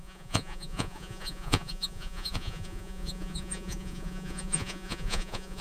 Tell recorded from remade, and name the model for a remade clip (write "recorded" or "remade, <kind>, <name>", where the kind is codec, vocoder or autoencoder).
remade, vocoder, Vocos